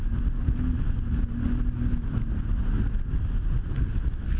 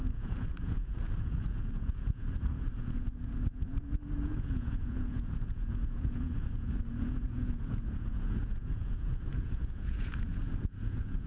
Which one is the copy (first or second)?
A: second